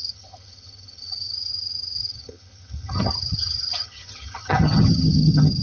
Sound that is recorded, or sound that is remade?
remade